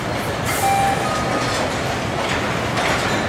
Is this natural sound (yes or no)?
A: yes